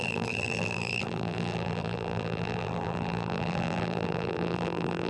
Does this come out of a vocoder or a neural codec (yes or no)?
yes